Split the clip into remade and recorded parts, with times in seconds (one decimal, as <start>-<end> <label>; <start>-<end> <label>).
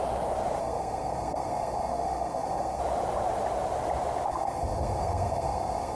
0.0-0.6 recorded; 0.6-2.8 remade; 2.8-4.3 recorded; 4.3-6.0 remade